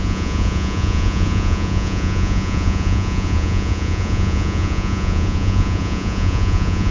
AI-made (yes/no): yes